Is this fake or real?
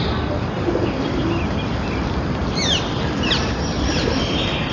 real